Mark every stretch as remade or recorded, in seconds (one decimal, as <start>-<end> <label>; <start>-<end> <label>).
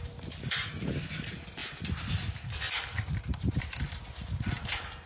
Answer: 0.0-5.1 recorded